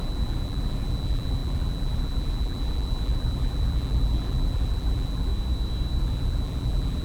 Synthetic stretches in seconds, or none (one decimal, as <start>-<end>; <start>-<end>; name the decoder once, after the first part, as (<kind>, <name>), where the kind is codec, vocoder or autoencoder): 0.0-5.3 (vocoder, BigVGAN v2); 6.0-7.0